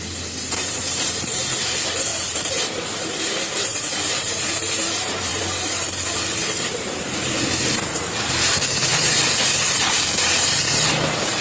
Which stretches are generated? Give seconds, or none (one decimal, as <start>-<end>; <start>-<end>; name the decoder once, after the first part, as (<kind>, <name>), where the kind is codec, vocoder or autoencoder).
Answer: 0.0-11.4 (vocoder, BigVGAN v2)

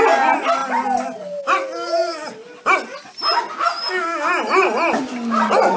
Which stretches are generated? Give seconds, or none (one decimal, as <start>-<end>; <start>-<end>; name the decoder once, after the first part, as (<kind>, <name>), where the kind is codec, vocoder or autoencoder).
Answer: none

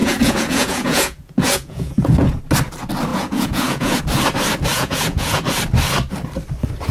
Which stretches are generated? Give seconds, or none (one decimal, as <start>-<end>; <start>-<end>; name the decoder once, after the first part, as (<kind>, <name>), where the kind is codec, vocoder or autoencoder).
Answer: 0.0-2.4 (vocoder, Vocos); 3.1-4.0; 4.7-5.4

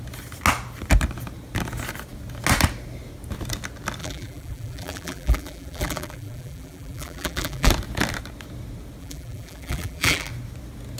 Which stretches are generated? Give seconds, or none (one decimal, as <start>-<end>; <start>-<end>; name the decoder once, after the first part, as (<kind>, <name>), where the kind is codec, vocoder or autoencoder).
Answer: 4.0-7.7 (vocoder, BigVGAN v2); 9.0-10.3

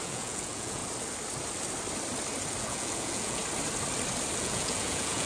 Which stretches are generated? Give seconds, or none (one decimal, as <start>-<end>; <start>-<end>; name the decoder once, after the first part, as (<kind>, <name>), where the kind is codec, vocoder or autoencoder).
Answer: 0.0-0.8 (vocoder, Vocos); 2.6-3.4; 4.4-5.3

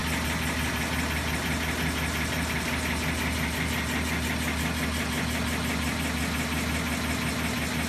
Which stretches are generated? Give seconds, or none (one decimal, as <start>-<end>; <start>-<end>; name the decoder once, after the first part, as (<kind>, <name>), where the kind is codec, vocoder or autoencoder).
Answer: none

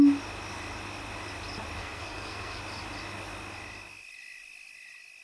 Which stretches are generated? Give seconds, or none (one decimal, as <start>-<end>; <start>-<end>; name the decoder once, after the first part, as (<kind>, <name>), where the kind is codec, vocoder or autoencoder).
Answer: 1.8-2.6 (codec, SNAC)